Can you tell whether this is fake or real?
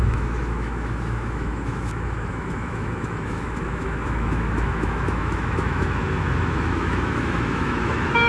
fake